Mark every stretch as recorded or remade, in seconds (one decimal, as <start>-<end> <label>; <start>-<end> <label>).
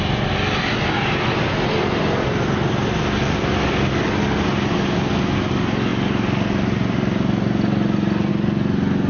0.0-9.1 recorded